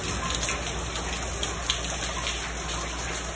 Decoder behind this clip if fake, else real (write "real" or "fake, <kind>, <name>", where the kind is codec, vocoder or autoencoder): real